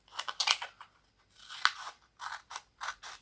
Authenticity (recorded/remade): recorded